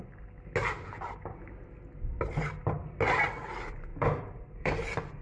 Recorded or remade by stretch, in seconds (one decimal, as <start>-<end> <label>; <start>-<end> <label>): 0.0-0.6 recorded; 0.6-1.3 remade; 1.3-3.9 recorded; 3.9-5.2 remade